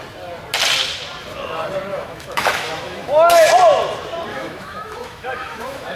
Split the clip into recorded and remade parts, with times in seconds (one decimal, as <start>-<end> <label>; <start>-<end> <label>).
0.0-1.9 recorded; 1.9-3.5 remade; 3.5-4.3 recorded; 4.3-6.0 remade